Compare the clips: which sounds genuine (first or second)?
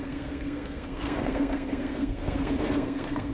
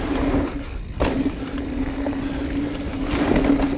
second